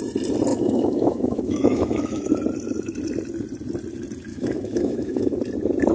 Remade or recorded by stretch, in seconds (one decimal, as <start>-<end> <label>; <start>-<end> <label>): 0.0-0.5 recorded; 0.5-2.3 remade; 2.3-4.3 recorded; 4.3-5.4 remade; 5.4-5.9 recorded